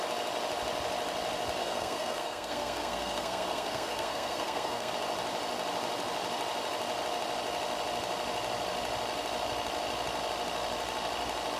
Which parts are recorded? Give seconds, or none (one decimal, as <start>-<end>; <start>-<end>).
0.0-1.6; 4.9-11.6